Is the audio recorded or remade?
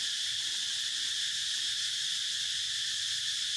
remade